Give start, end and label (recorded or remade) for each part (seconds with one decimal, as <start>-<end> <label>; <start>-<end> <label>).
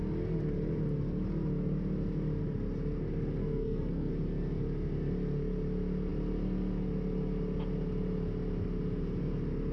0.0-3.4 recorded; 3.4-4.1 remade; 4.1-9.7 recorded